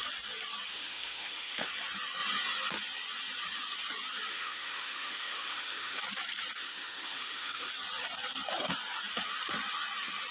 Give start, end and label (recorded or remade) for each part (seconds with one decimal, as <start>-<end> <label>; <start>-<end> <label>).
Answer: 0.0-0.7 recorded; 0.7-1.7 remade; 1.7-4.3 recorded; 4.3-6.0 remade; 6.0-6.6 recorded; 6.6-7.7 remade; 7.7-10.3 recorded